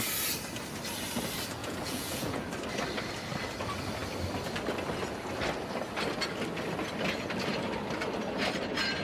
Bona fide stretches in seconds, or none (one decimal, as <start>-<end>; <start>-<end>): 0.0-1.6; 2.4-9.0